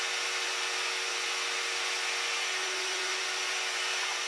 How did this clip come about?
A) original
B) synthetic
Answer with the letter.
B